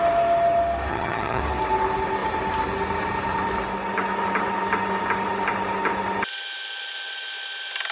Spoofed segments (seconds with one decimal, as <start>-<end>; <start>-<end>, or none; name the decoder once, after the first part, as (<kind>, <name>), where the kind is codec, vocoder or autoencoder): 0.9-1.4 (vocoder, HiFi-GAN)